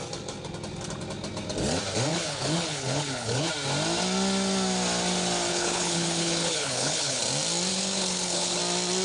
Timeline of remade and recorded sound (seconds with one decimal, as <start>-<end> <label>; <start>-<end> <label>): 0.0-2.1 recorded; 2.1-3.5 remade; 3.5-5.5 recorded; 5.5-7.2 remade; 7.2-7.7 recorded; 7.7-8.6 remade; 8.6-9.0 recorded